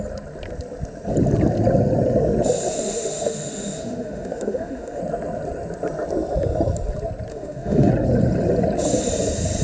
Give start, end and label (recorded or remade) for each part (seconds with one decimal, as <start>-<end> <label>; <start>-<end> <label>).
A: 0.0-2.7 recorded; 2.7-5.0 remade; 5.0-7.3 recorded; 7.3-7.9 remade; 7.9-9.6 recorded